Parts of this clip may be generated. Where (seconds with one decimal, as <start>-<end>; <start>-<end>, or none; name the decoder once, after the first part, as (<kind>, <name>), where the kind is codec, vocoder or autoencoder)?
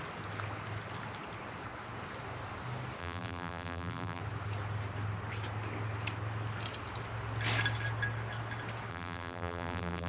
3.0-4.2 (vocoder, BigVGAN v2); 8.9-10.1